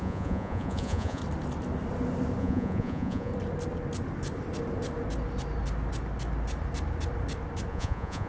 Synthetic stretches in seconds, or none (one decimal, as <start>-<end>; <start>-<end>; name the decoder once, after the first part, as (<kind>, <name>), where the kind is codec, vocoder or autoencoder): 0.0-1.2 (vocoder, Vocos); 2.4-3.3; 7.7-8.3

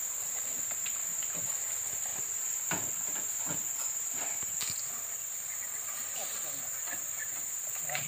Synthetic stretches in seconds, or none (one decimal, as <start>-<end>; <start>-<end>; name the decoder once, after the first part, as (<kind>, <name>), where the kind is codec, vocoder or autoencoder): 0.0-8.1 (vocoder, BigVGAN v2)

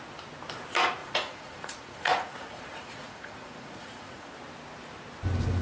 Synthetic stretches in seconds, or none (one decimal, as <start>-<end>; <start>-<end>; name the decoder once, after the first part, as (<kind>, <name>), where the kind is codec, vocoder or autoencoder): 1.0-4.3 (vocoder, Vocos)

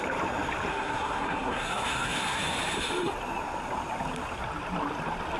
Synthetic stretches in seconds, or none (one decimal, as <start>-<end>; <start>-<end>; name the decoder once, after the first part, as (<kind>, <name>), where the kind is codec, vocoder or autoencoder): 0.7-2.4 (codec, SNAC)